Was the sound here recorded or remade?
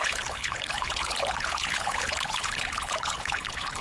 remade